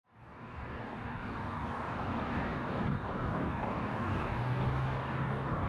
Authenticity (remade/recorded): remade